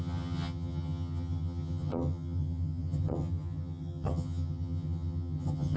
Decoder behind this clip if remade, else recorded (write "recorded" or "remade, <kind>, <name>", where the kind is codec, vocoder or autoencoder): remade, vocoder, HiFi-GAN